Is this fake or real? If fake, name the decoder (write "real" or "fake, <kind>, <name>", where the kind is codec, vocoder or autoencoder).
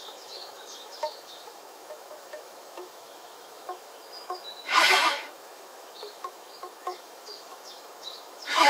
fake, autoencoder, DAC-VAE